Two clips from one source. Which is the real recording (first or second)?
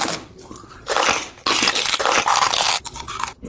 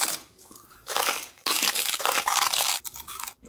first